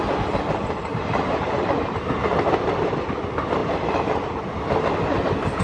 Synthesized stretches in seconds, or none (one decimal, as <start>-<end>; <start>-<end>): 0.9-1.9